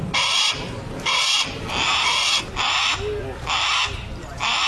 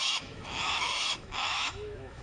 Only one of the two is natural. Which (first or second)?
first